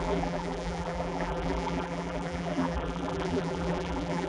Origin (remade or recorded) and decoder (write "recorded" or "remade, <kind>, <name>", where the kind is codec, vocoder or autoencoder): remade, vocoder, BigVGAN v2